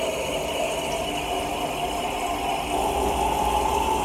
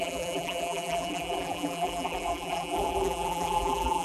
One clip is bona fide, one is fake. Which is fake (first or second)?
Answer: second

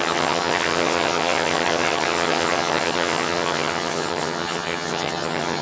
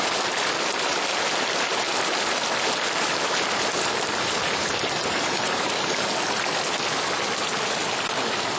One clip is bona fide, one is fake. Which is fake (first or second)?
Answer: first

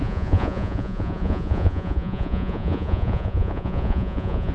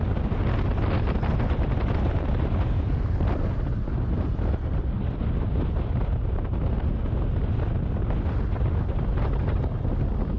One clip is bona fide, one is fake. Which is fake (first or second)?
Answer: first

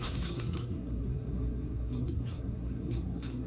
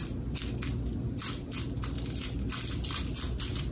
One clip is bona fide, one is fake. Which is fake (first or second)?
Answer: first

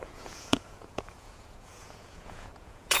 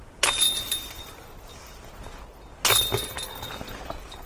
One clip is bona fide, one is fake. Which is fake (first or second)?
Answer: first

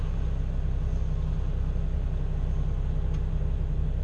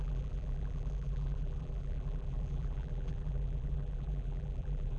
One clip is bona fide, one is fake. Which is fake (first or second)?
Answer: second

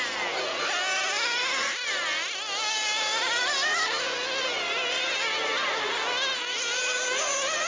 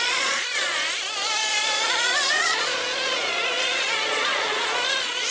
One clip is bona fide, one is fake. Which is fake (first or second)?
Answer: second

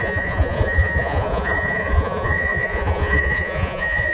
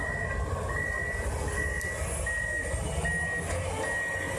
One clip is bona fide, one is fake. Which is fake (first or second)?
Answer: first